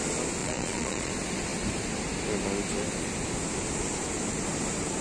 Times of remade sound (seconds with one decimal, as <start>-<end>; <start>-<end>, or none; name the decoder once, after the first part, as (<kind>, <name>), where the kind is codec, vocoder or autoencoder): 0.4-1.1 (vocoder, Vocos)